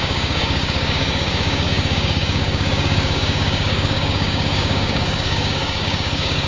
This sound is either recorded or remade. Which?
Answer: remade